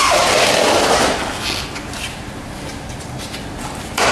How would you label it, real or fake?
real